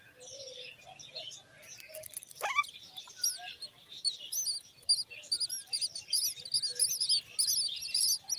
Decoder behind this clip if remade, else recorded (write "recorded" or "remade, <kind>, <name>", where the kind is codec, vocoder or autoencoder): recorded